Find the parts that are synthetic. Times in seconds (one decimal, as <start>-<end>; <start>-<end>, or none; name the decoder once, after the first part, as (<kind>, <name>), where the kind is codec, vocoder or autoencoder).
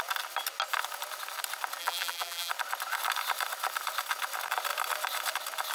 1.8-2.5 (vocoder, BigVGAN v2)